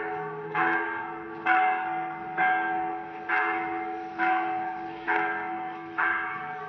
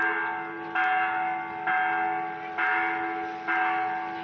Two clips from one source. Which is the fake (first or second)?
first